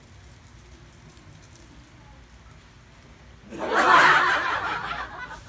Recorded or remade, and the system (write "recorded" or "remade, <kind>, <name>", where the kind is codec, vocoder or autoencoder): recorded